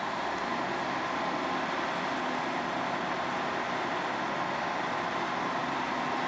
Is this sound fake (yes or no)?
no